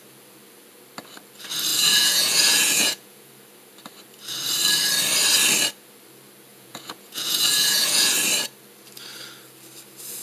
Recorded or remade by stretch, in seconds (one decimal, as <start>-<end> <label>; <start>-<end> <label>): 0.0-1.7 recorded; 1.7-3.3 remade; 3.3-6.5 recorded; 6.5-8.1 remade; 8.1-10.2 recorded